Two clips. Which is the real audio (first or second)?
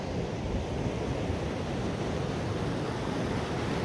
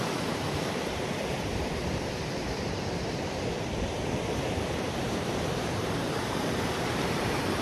first